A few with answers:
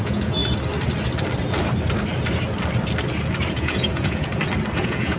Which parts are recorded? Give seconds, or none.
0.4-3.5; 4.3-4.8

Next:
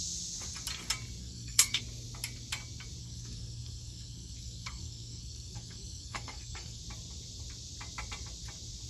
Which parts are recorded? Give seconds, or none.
0.0-1.2; 1.8-3.0; 6.8-8.9

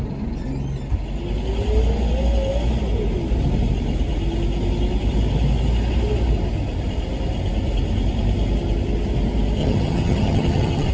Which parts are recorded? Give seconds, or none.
0.0-9.6

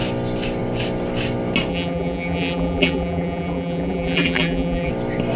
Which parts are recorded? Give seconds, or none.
0.0-1.7; 4.9-5.4

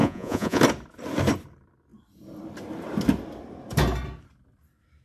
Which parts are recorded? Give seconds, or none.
0.6-5.0

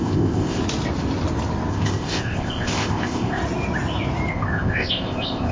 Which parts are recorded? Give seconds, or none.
0.6-1.7; 3.4-4.3

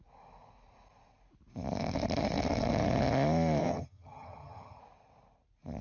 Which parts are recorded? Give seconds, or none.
0.0-3.6; 4.8-5.8